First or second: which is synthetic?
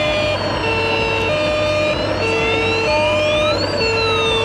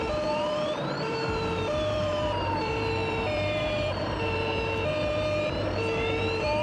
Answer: second